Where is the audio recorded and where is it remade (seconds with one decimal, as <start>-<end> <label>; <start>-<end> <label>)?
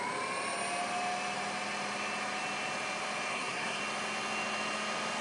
0.0-3.3 recorded; 3.3-3.8 remade; 3.8-5.2 recorded